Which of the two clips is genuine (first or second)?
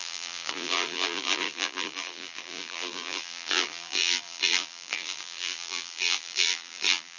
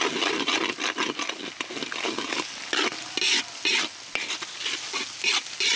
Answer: second